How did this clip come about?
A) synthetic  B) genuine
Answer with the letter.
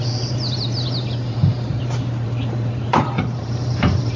A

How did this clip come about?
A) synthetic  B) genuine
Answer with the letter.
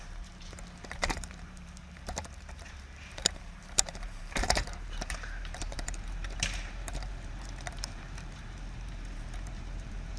A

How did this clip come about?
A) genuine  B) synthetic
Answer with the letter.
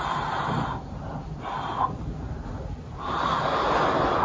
A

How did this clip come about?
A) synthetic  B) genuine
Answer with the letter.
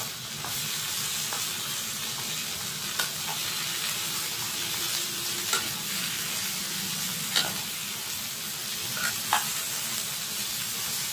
B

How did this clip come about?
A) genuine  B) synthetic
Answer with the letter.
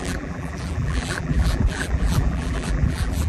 B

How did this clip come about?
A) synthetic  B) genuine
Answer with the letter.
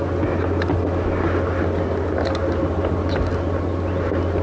B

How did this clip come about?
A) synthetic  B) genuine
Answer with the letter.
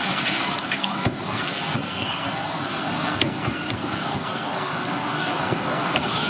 A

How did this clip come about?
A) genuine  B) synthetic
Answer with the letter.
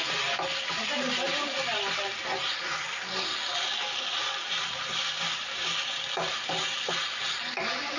A